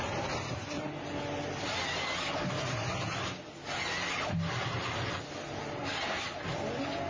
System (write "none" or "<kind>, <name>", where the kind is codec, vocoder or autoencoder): none